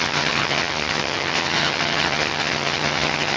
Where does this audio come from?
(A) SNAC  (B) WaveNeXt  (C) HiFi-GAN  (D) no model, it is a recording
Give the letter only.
C